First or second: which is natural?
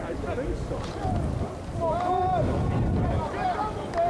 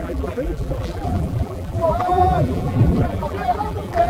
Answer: first